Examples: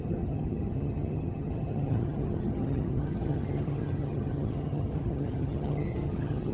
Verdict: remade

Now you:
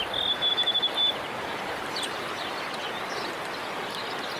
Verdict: recorded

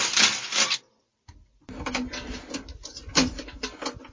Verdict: recorded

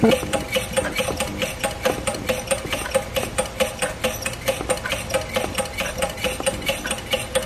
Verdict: recorded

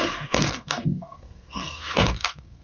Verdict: remade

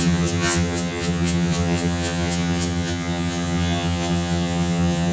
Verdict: remade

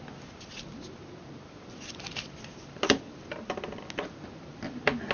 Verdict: recorded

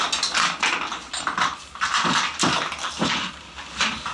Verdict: recorded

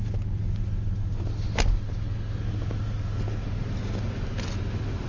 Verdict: recorded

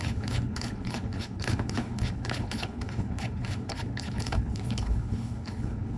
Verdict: remade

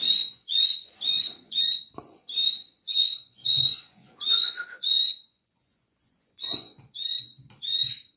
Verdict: remade